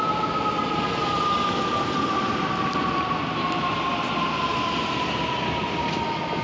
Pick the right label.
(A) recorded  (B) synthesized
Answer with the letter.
A